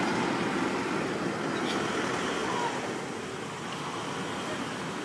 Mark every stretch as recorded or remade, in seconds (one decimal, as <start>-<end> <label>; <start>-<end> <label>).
0.0-5.0 recorded

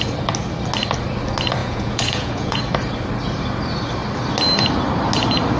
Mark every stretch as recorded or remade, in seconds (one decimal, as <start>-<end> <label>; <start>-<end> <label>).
0.0-1.6 recorded; 1.6-2.6 remade; 2.6-5.6 recorded